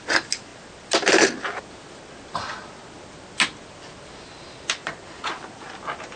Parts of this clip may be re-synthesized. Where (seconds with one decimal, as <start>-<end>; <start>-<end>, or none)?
4.8-5.3

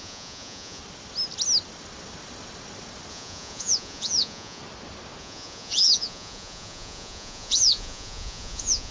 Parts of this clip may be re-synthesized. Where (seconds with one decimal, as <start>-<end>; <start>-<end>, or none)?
0.0-0.8; 3.1-4.6; 5.2-8.9

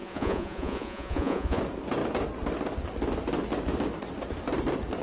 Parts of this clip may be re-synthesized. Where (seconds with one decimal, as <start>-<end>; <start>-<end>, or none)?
0.0-1.6

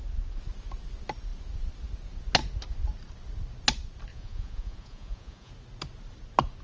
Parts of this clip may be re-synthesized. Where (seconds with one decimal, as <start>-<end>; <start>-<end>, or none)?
4.1-5.5

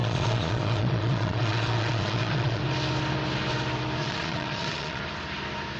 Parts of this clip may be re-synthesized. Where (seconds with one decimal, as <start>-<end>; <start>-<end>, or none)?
0.0-2.6; 4.0-5.0

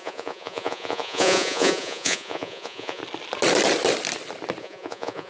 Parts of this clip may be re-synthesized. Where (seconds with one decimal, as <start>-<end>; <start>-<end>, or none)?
0.0-3.0; 4.6-5.3